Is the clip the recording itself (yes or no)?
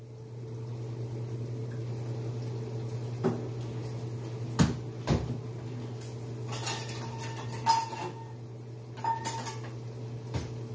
yes